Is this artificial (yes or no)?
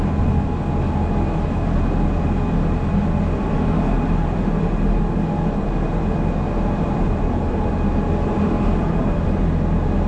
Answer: no